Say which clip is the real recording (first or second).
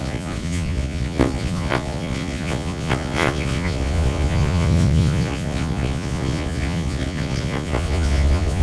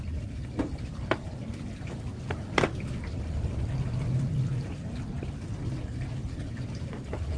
second